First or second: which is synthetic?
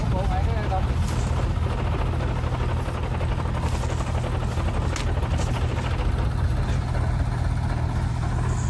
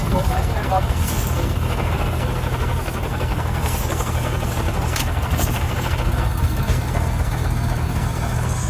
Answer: second